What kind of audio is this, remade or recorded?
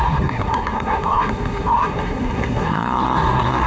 remade